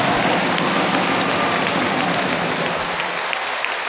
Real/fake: real